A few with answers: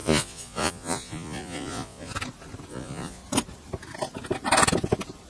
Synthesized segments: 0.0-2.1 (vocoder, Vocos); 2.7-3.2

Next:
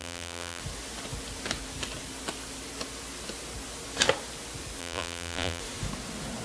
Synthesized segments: 0.0-0.6 (vocoder, BigVGAN v2); 4.8-5.6

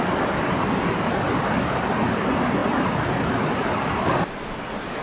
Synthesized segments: none

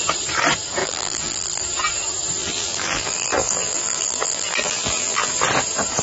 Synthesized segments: 0.8-1.6 (vocoder, BigVGAN v2); 2.4-5.3